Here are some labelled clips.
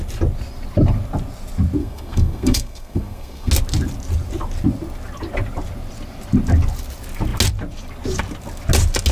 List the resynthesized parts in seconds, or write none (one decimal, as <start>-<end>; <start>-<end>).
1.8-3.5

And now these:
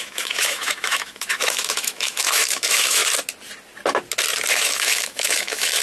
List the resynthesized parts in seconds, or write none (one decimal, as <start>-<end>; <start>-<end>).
0.0-3.0; 4.5-5.8

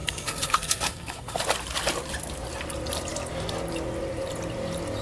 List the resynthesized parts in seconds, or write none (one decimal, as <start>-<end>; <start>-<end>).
0.0-1.4

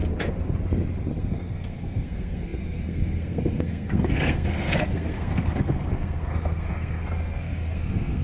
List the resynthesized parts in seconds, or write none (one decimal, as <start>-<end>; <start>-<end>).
1.2-8.2